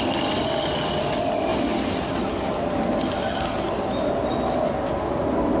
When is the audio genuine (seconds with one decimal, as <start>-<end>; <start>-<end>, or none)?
0.0-5.6